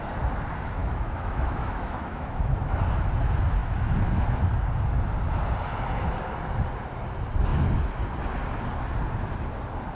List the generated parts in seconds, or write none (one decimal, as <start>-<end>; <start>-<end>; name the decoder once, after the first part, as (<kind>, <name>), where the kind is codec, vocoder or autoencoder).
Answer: 0.8-2.8 (autoencoder, DAC-VAE)